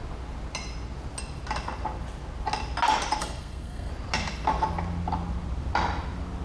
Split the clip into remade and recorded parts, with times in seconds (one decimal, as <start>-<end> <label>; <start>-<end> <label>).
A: 0.0-3.2 recorded; 3.2-3.9 remade; 3.9-6.4 recorded